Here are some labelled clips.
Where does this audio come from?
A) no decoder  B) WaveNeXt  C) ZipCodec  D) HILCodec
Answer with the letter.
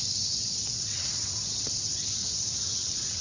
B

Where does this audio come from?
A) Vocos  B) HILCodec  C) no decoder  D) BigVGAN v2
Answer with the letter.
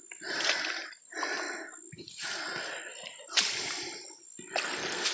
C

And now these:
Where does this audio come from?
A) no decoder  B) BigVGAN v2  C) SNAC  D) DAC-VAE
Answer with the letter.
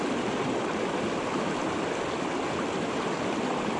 A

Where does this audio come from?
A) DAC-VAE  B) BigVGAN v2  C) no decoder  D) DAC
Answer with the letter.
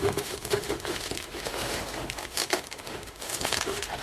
A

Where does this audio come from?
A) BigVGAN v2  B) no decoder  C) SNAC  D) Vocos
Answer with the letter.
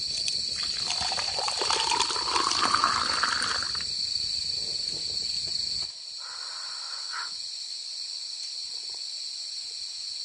B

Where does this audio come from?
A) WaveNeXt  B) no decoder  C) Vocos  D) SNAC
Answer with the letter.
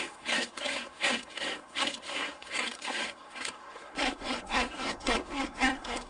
D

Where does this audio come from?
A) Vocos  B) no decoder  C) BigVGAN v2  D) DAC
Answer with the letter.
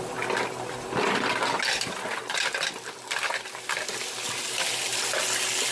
B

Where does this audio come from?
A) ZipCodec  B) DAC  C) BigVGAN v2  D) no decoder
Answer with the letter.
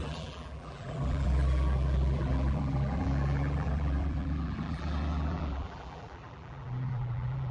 C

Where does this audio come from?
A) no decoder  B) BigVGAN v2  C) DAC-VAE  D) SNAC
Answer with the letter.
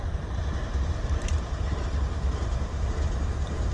B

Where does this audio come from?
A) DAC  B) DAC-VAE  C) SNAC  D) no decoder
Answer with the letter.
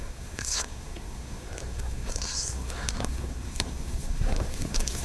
C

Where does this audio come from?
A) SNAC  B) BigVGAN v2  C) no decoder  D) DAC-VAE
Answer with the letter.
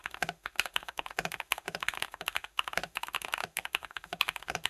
D